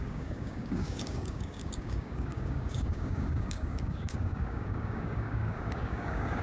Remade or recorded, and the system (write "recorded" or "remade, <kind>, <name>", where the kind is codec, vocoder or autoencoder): remade, codec, DAC